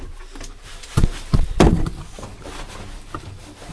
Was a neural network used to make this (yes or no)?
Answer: no